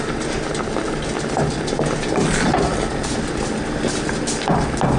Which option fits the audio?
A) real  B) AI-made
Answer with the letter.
A